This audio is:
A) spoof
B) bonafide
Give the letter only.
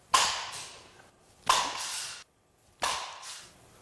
B